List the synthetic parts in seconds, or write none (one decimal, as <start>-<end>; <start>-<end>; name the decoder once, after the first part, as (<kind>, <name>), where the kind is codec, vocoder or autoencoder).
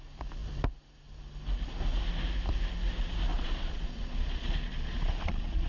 3.3-5.7 (vocoder, Vocos)